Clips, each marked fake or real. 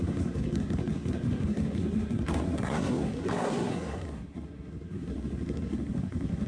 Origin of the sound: fake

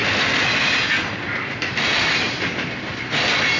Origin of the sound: real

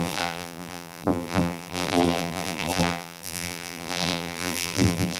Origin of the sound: fake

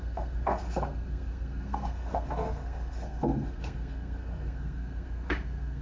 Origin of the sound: fake